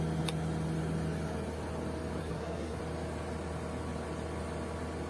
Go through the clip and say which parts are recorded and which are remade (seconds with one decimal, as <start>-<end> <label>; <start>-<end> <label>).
0.0-2.2 recorded; 2.2-2.8 remade; 2.8-5.1 recorded